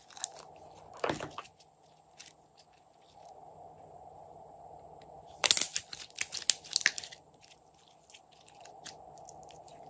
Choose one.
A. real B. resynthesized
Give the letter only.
A